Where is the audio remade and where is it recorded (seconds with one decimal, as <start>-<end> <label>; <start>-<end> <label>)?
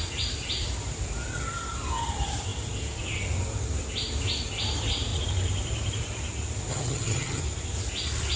0.0-6.7 recorded; 6.7-7.4 remade; 7.4-8.4 recorded